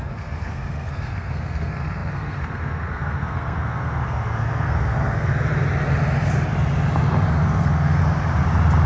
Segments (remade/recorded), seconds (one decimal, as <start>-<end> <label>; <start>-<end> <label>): 0.0-5.3 remade; 5.3-7.4 recorded; 7.4-8.0 remade; 8.0-8.9 recorded